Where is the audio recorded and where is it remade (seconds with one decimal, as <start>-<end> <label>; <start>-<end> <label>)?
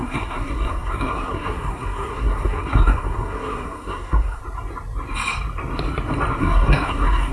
0.0-4.4 remade; 4.4-6.4 recorded; 6.4-7.3 remade